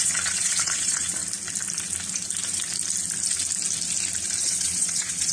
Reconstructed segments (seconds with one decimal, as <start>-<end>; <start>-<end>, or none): 0.0-1.2; 4.4-5.3